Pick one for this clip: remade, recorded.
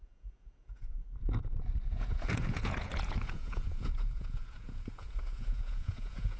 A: remade